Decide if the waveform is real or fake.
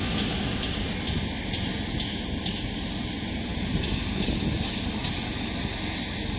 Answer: real